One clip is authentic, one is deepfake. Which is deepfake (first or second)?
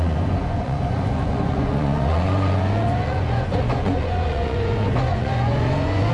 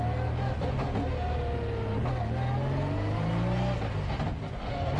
first